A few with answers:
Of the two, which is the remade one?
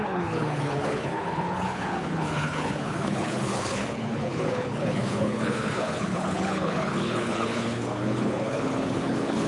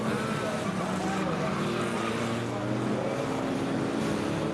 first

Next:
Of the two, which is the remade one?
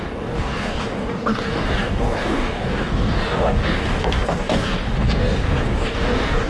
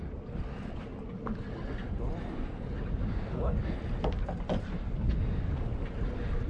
first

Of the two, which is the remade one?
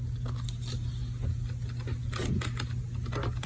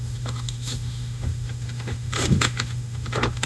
second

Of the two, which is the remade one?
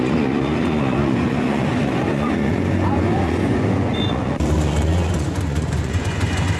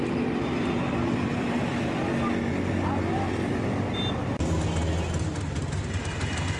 first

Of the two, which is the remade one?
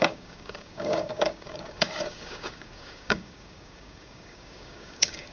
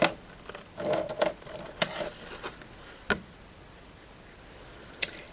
first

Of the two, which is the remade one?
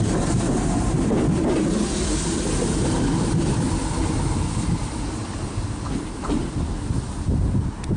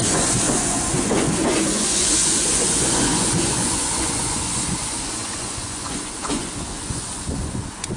second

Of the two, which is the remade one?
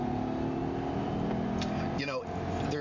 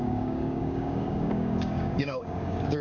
second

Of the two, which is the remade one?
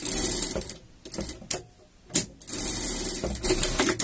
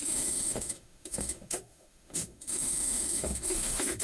second